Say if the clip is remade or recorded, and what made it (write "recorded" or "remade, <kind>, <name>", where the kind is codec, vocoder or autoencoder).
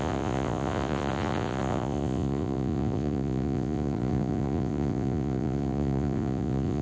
remade, vocoder, Vocos